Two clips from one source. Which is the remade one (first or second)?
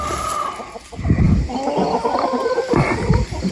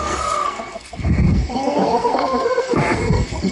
second